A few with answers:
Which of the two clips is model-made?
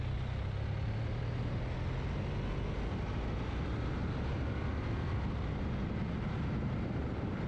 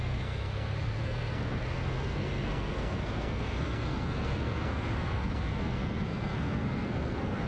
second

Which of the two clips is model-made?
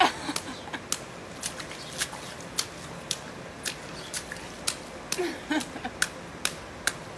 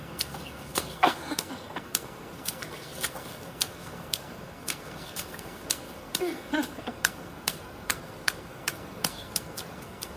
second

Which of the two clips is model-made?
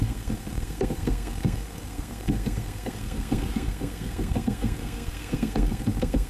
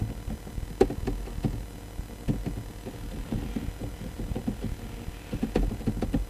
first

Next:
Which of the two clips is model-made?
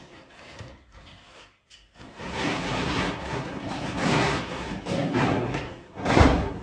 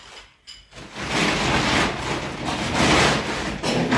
first